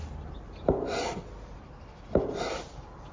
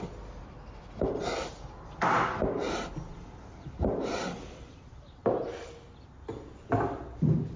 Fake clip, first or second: first